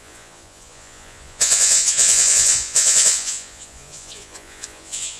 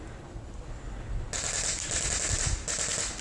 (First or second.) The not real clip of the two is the first